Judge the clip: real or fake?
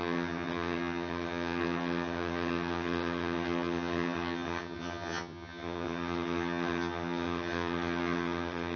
fake